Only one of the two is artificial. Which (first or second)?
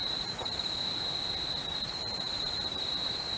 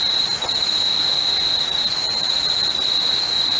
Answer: first